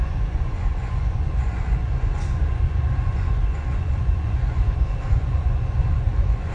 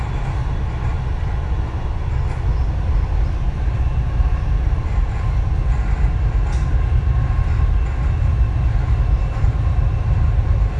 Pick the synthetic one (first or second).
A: first